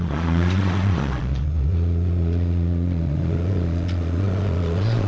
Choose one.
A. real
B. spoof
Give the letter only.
B